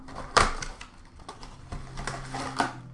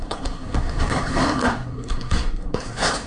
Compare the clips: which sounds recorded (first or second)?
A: first